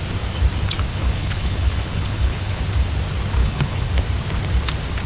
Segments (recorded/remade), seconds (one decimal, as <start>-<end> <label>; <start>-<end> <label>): 0.0-0.9 recorded; 0.9-2.6 remade; 2.6-3.4 recorded; 3.4-3.9 remade; 3.9-5.1 recorded